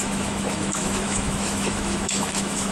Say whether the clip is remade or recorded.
remade